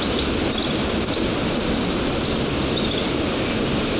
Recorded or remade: recorded